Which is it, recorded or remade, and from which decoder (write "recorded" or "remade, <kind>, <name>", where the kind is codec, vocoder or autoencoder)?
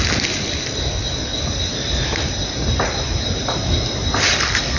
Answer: recorded